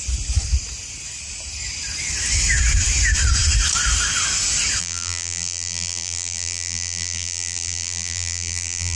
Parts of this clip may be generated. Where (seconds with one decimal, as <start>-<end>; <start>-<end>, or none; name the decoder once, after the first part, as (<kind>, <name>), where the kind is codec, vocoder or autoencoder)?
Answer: 4.8-9.0 (vocoder, BigVGAN v2)